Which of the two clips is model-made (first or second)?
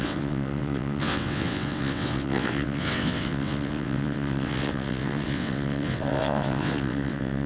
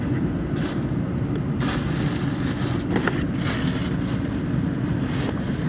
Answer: first